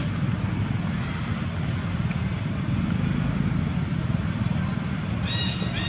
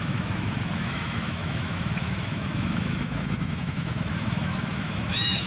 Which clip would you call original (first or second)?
first